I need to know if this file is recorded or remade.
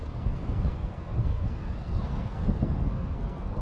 remade